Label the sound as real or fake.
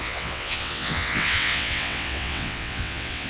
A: fake